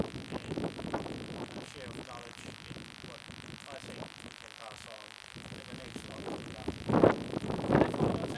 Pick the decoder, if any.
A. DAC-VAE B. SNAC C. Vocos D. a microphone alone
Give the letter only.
D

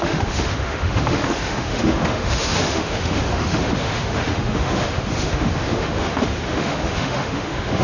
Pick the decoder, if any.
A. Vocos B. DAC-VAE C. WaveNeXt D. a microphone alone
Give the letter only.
B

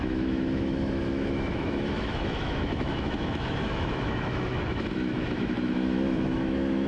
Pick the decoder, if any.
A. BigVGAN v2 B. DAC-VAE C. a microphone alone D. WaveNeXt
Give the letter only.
B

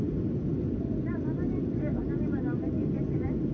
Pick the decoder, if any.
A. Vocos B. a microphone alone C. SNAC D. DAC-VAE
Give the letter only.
B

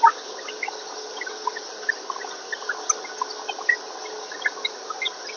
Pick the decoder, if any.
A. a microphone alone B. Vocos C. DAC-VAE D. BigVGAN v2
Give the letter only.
A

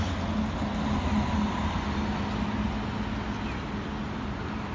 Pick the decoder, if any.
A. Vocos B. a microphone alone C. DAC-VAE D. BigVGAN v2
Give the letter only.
B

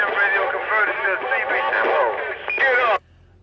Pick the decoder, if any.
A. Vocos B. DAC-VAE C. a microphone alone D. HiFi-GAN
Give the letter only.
C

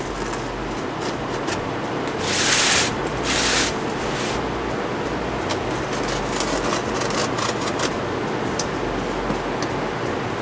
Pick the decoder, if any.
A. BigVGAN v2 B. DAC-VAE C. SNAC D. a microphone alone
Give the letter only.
D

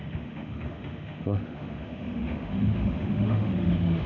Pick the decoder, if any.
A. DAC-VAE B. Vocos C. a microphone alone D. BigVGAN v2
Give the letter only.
A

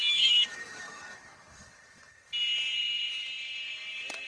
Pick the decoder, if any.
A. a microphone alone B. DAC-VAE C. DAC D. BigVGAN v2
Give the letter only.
B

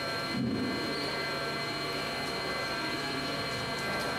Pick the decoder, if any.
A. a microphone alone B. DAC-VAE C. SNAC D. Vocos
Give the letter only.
A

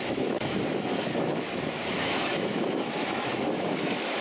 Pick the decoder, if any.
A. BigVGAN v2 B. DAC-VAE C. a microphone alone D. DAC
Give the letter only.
B